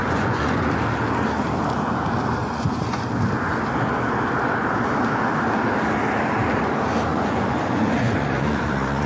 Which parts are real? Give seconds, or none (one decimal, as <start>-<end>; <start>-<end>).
0.7-2.4; 3.0-7.1